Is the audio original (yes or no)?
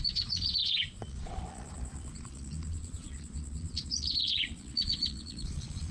no